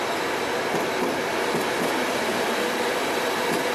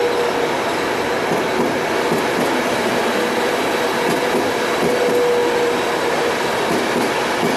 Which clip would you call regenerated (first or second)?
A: first